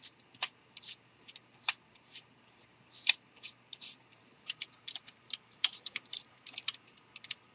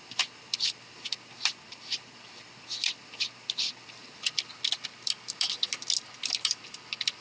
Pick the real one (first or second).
second